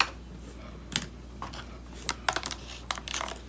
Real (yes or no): yes